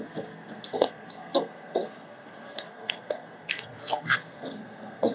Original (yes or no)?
no